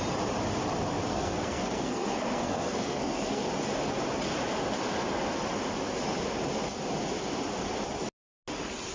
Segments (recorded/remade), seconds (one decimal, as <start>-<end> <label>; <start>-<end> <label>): 0.0-1.1 recorded; 1.1-3.5 remade; 3.5-8.9 recorded